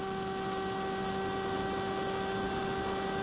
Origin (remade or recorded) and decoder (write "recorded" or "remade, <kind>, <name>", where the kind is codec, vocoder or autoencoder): recorded